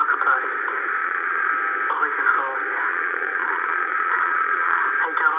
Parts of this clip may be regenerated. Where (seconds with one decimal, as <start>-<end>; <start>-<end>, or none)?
1.0-1.5; 2.9-4.8